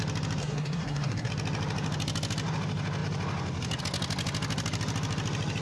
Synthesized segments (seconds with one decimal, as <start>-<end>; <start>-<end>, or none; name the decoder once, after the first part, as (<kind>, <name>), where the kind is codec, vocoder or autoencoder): 0.4-1.3 (codec, SNAC)